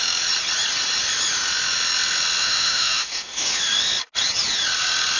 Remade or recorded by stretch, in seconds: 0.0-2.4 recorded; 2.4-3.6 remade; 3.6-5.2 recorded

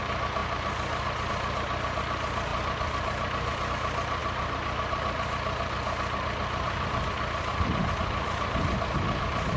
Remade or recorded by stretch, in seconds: 0.0-9.6 recorded

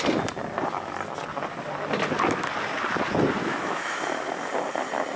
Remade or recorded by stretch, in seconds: 0.0-3.4 recorded; 3.4-4.0 remade; 4.0-5.2 recorded

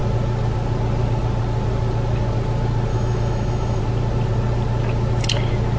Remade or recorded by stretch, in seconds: 0.0-2.9 recorded; 2.9-3.8 remade; 3.8-5.8 recorded

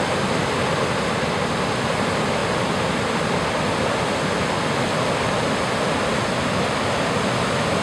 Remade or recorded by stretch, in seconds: 0.0-7.8 recorded